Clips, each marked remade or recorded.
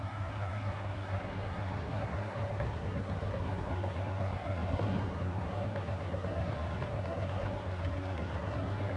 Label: remade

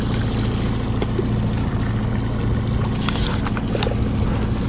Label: recorded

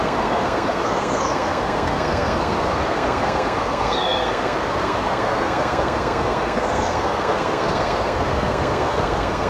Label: remade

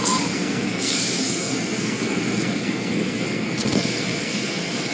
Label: remade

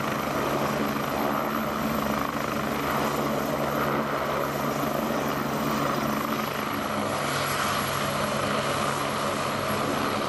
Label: recorded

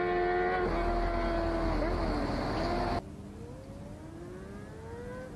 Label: recorded